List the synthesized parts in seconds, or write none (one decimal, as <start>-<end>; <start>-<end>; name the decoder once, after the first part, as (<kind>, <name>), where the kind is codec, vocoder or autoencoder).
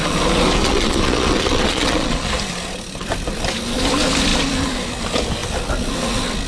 0.6-2.3 (vocoder, Vocos)